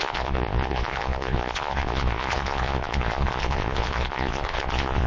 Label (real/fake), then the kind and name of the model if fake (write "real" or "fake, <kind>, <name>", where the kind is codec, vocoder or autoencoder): fake, vocoder, Vocos